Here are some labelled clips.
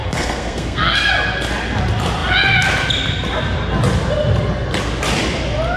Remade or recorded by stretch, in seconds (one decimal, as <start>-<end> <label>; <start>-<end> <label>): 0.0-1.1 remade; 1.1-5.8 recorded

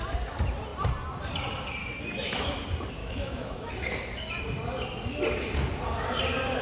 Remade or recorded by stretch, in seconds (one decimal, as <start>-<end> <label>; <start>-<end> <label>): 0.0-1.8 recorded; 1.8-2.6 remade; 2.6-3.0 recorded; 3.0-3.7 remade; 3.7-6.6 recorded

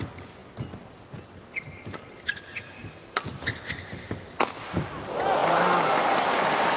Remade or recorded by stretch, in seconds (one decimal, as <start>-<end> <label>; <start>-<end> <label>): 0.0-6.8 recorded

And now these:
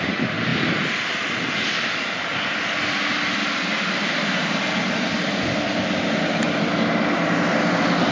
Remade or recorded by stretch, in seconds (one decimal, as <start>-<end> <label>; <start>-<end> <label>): 0.0-8.1 recorded

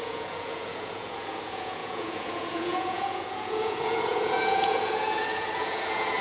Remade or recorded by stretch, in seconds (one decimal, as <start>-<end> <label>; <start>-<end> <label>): 0.0-6.2 remade

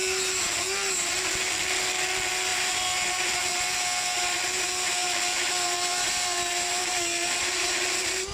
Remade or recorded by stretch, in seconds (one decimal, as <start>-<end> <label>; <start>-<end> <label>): 0.0-2.5 recorded; 2.5-3.6 remade; 3.6-5.0 recorded; 5.0-7.7 remade; 7.7-8.3 recorded

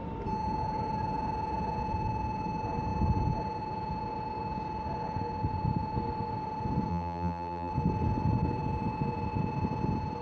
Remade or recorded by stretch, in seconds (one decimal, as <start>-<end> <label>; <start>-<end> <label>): 0.0-6.9 recorded; 6.9-7.7 remade; 7.7-10.2 recorded

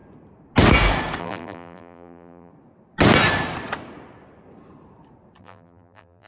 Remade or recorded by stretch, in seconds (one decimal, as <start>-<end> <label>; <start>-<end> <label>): 0.0-1.2 recorded; 1.2-2.5 remade; 2.5-5.4 recorded; 5.4-6.3 remade